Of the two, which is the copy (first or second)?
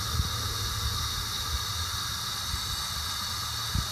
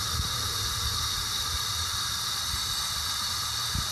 second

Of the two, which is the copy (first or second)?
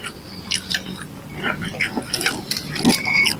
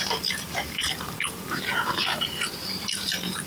second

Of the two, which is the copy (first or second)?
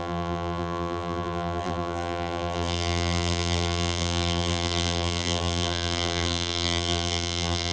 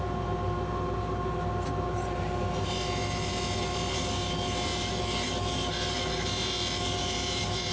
first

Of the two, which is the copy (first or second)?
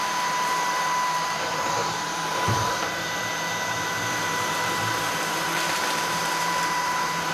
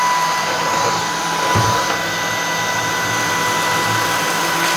first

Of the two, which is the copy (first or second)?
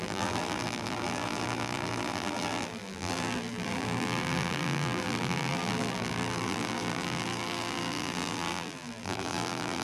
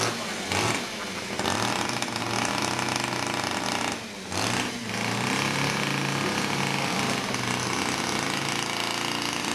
first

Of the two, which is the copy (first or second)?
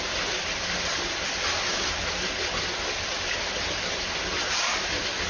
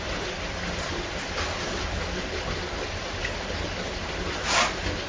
first